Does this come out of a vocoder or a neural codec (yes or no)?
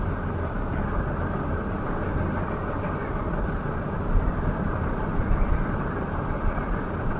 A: no